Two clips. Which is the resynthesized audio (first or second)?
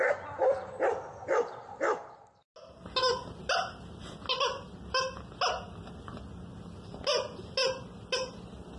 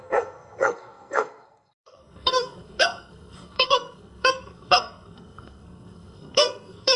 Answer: second